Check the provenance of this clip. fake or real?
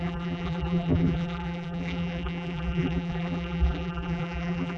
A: fake